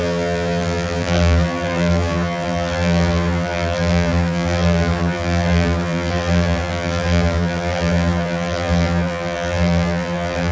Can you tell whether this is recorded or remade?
remade